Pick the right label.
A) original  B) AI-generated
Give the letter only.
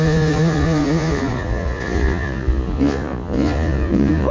B